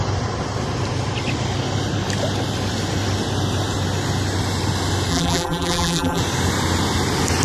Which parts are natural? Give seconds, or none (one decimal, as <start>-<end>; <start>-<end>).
0.0-5.1; 6.2-7.4